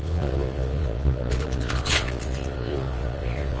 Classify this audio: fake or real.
fake